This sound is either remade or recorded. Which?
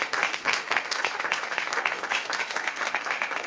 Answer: remade